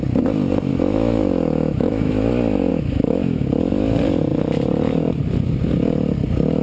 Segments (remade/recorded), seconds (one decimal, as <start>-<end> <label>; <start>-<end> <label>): 0.0-0.7 recorded; 0.7-2.3 remade; 2.3-2.7 recorded; 2.7-3.5 remade; 3.5-6.6 recorded

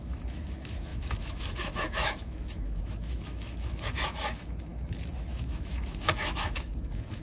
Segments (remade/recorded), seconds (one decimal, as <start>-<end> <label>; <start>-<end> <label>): 0.0-7.2 remade

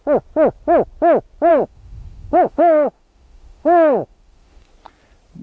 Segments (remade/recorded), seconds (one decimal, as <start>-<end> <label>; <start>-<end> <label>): 0.0-1.5 recorded; 1.5-4.7 remade; 4.7-5.4 recorded

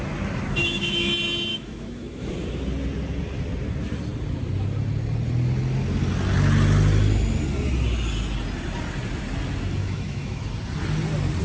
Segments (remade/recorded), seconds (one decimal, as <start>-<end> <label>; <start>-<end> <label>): 0.0-0.6 recorded; 0.6-1.1 remade; 1.1-1.5 recorded; 1.5-2.3 remade; 2.3-9.8 recorded; 9.8-10.5 remade; 10.5-11.4 recorded

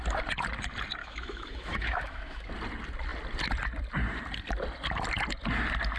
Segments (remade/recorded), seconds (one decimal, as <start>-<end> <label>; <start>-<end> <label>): 0.0-1.0 recorded; 1.0-2.5 remade; 2.5-6.0 recorded

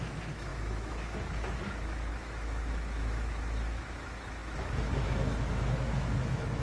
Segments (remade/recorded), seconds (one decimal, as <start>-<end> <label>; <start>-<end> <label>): 0.0-6.6 remade

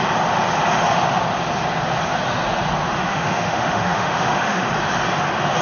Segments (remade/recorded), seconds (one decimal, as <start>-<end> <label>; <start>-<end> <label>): 0.0-3.1 recorded; 3.1-4.7 remade; 4.7-5.6 recorded